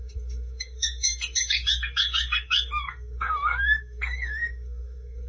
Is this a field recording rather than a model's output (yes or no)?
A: no